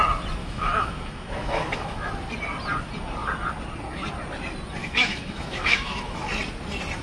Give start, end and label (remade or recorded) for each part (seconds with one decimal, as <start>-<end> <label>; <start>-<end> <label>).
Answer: 0.0-0.4 recorded; 0.4-2.1 remade; 2.1-4.8 recorded; 4.8-6.2 remade; 6.2-7.0 recorded